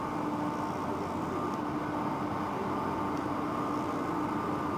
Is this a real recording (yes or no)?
yes